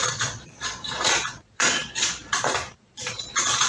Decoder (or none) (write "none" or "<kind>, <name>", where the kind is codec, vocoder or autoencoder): vocoder, Vocos